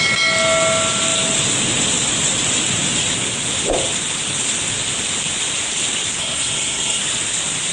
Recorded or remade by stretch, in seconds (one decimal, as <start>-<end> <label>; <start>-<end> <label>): 0.0-6.2 recorded; 6.2-7.0 remade; 7.0-7.7 recorded